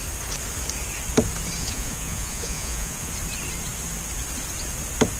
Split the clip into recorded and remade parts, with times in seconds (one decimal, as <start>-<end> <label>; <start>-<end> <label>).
0.0-1.6 recorded; 1.6-3.1 remade; 3.1-5.2 recorded